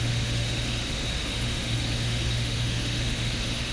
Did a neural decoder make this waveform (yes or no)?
yes